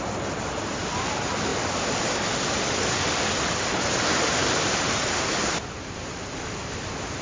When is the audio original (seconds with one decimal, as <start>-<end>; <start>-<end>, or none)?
0.0-7.2